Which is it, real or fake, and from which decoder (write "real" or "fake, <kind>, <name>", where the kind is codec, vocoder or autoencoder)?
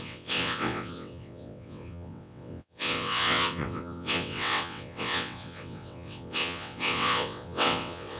fake, vocoder, WaveNeXt